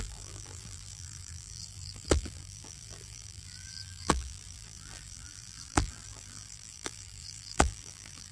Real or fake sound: fake